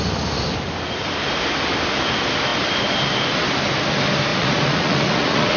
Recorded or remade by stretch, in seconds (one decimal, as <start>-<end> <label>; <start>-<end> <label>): 0.0-4.3 recorded; 4.3-5.6 remade

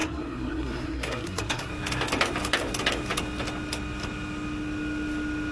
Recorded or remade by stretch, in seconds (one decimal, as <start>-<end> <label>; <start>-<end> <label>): 0.0-1.7 remade; 1.7-5.5 recorded